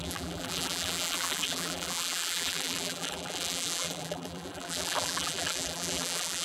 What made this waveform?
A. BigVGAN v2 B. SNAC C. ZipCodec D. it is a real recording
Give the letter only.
A